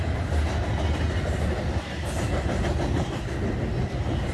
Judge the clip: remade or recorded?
recorded